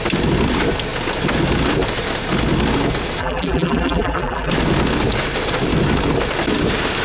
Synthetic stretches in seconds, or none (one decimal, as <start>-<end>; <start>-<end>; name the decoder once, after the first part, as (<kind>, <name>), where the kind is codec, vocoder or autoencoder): 3.2-4.5 (vocoder, BigVGAN v2)